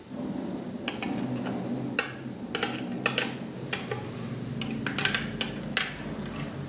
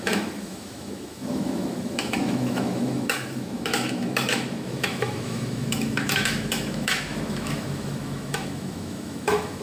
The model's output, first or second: second